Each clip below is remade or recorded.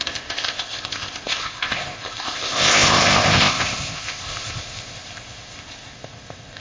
remade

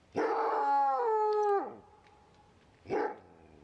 recorded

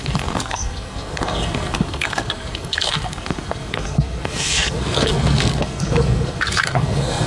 remade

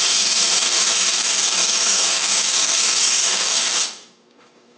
remade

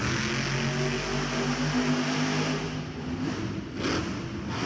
recorded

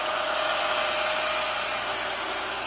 recorded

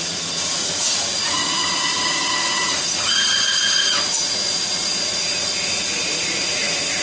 remade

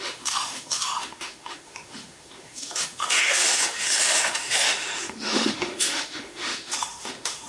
remade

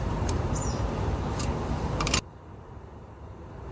remade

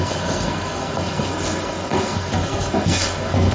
remade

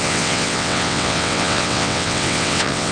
remade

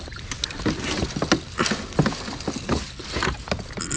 recorded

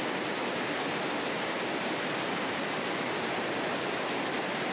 recorded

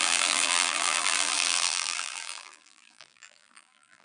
remade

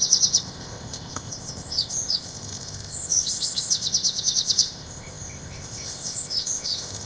remade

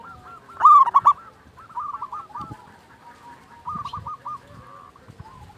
recorded